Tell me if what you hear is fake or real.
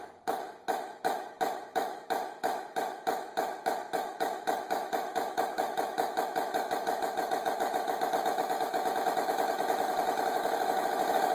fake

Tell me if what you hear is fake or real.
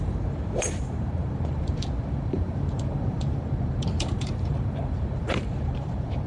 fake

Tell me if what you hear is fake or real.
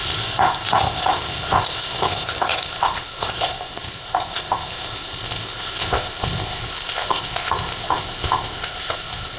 fake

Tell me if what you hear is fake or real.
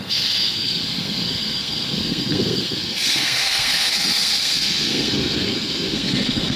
fake